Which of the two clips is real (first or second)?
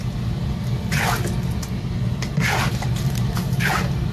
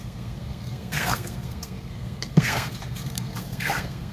first